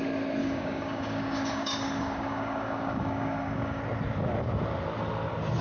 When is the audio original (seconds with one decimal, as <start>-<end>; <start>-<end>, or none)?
0.0-0.4; 3.8-5.6